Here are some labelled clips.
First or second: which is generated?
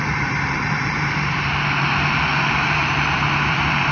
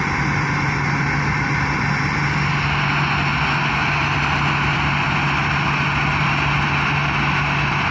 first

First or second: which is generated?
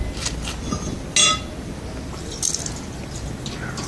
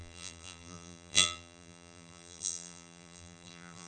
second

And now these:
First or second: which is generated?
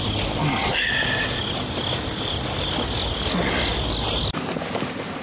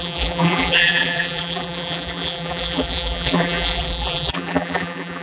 second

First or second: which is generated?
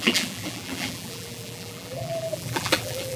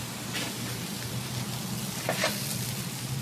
first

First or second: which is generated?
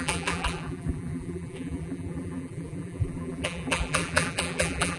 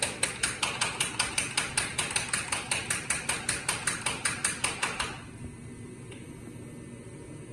first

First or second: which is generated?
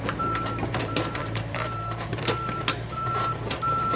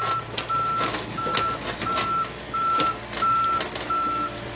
first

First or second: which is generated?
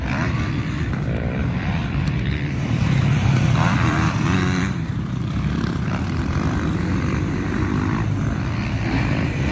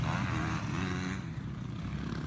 first